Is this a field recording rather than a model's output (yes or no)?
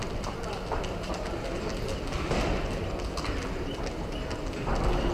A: yes